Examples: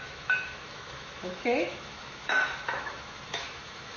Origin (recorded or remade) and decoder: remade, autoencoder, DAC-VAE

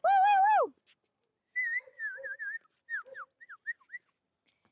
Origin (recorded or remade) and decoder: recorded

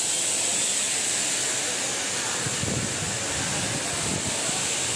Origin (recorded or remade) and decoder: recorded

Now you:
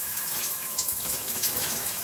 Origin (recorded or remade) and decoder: remade, autoencoder, DAC-VAE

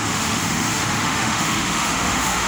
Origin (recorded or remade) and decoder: remade, autoencoder, DAC-VAE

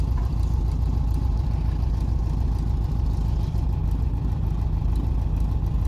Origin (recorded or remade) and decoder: recorded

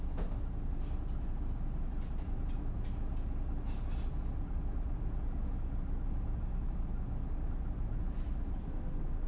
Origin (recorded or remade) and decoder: recorded